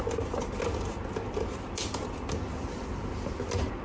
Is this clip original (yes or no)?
yes